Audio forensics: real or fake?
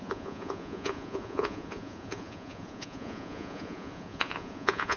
fake